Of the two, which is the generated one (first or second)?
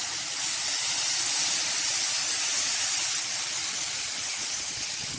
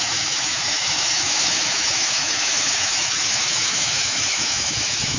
second